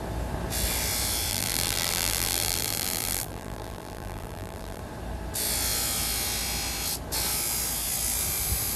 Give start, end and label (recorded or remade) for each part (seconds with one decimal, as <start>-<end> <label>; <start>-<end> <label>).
0.0-1.3 recorded; 1.3-4.8 remade; 4.8-8.8 recorded